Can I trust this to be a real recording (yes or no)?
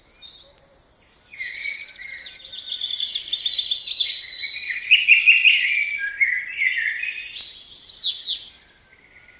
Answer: yes